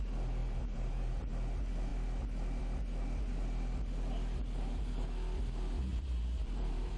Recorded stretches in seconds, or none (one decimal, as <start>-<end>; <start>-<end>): 0.0-0.4; 1.3-5.9